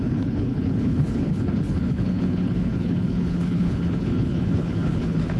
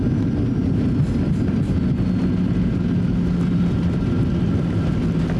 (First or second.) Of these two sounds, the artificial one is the first